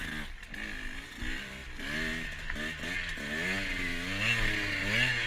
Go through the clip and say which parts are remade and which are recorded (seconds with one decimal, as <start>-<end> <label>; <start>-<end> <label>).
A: 0.0-5.3 recorded